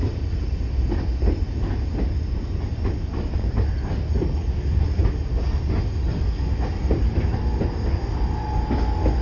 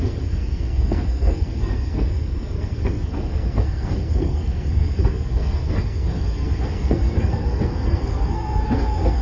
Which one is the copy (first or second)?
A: second